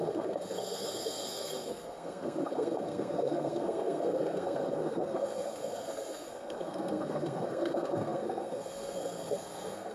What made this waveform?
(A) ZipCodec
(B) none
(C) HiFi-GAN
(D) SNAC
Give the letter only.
D